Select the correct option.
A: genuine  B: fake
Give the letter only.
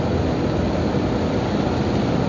A